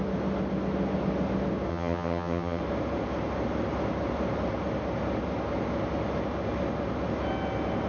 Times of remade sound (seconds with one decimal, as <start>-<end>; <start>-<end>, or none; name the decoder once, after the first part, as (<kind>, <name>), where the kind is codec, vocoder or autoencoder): 1.7-2.6 (vocoder, HiFi-GAN)